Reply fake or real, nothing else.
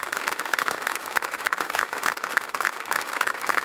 fake